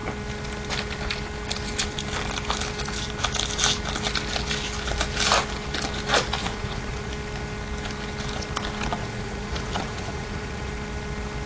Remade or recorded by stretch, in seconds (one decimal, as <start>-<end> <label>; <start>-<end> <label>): 0.0-6.4 recorded; 6.4-7.1 remade; 7.1-9.0 recorded; 9.0-10.7 remade; 10.7-11.5 recorded